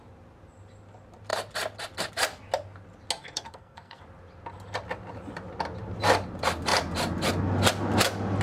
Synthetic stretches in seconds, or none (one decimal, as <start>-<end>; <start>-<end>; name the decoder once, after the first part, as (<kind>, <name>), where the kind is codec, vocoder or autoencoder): 3.2-4.0 (codec, SNAC)